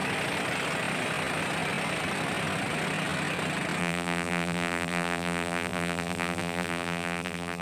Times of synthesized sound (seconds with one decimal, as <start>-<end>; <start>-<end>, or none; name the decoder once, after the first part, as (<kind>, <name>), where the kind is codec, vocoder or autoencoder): 3.8-7.6 (vocoder, BigVGAN v2)